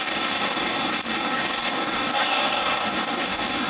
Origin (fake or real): fake